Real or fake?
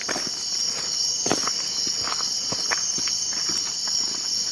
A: real